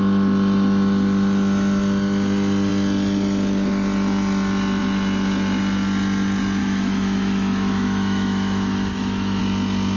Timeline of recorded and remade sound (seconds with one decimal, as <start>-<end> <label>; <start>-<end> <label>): 0.0-6.6 recorded; 6.6-9.4 remade; 9.4-10.0 recorded